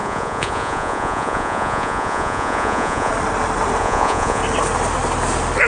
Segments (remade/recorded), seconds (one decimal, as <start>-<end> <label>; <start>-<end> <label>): 0.0-3.1 remade; 3.1-3.8 recorded; 3.8-4.4 remade; 4.4-5.7 recorded